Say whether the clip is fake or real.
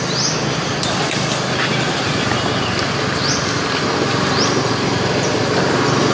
real